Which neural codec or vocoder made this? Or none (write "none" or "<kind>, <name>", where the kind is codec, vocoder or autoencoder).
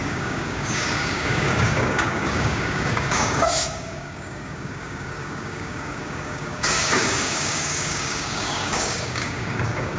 codec, DAC